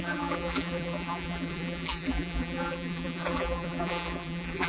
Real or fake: fake